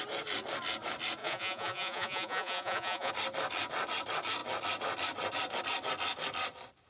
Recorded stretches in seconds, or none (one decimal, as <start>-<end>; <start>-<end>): 0.0-1.2; 3.1-6.9